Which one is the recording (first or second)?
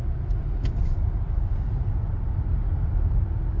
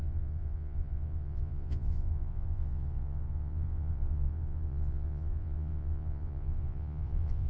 first